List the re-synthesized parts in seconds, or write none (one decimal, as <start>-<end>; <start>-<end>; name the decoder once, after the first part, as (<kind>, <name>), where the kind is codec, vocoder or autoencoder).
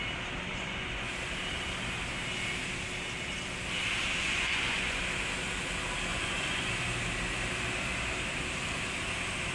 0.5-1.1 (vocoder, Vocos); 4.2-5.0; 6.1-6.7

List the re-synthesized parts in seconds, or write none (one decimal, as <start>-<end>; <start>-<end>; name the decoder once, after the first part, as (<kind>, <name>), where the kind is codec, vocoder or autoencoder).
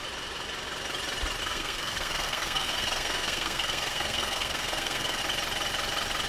1.4-5.2 (codec, SNAC)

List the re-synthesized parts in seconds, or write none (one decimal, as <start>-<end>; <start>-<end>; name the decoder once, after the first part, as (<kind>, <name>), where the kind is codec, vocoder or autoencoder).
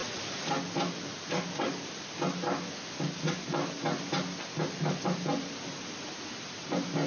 0.0-0.5 (vocoder, Vocos)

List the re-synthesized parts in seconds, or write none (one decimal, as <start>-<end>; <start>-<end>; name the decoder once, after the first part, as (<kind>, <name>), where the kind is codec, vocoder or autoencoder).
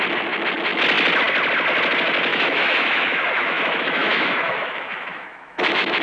2.3-6.0 (autoencoder, DAC-VAE)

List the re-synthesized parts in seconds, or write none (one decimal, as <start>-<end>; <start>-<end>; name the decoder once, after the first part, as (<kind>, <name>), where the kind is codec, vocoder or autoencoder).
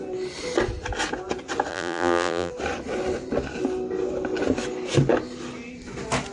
1.7-2.5 (vocoder, BigVGAN v2)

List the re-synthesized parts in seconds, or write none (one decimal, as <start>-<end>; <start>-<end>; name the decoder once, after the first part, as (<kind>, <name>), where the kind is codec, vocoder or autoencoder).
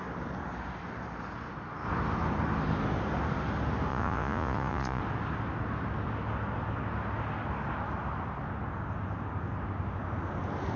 3.9-5.0 (vocoder, Vocos)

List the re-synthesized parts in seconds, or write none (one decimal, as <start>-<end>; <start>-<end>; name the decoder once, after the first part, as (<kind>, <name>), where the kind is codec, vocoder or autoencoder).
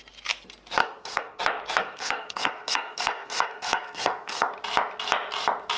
0.8-1.4 (codec, SNAC); 1.8-4.5